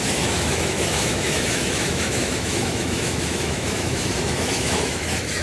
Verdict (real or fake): fake